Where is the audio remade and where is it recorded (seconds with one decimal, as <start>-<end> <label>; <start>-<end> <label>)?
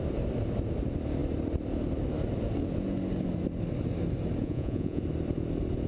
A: 0.0-4.4 recorded; 4.4-5.0 remade; 5.0-5.9 recorded